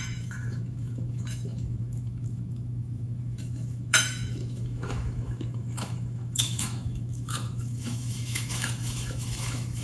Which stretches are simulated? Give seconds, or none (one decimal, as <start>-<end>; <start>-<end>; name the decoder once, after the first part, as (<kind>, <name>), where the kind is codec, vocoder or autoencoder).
0.0-9.8 (autoencoder, DAC-VAE)